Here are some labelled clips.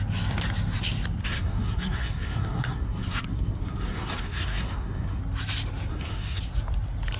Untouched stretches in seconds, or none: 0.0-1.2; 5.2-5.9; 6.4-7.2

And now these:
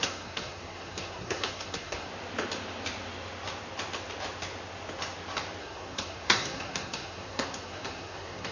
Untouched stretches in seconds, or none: 2.1-5.6

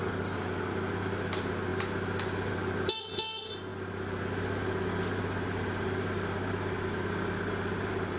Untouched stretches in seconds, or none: 0.0-8.2

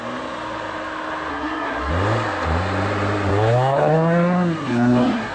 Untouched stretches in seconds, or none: 0.0-1.3; 1.9-3.3

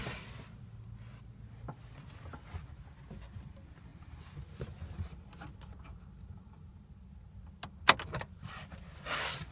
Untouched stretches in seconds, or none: 0.0-9.5

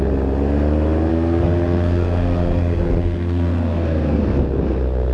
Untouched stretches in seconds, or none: 0.0-1.1; 4.2-5.1

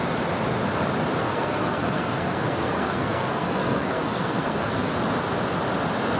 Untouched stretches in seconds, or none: 0.0-1.2; 4.9-6.2

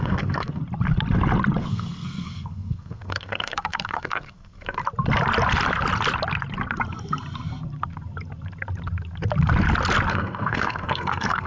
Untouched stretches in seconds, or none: 0.6-1.6; 4.8-10.1